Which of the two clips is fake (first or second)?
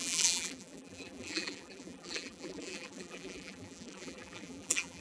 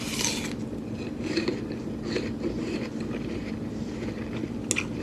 first